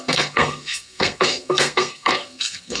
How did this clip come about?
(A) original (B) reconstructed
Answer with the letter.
B